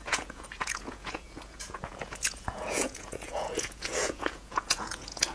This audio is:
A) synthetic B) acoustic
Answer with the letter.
A